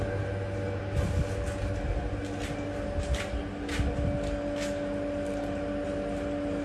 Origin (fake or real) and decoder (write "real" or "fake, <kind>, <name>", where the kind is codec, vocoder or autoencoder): real